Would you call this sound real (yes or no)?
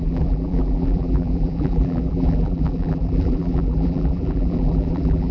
no